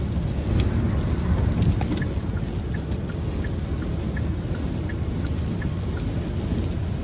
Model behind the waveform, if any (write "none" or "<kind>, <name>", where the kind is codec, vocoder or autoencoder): none